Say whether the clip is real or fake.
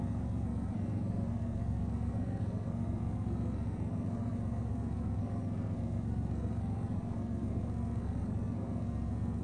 fake